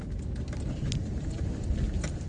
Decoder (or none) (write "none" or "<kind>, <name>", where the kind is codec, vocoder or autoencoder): none